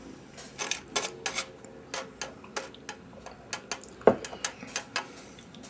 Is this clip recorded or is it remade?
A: recorded